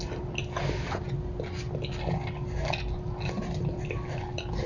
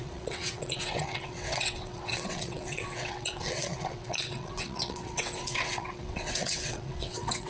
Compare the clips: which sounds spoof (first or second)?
second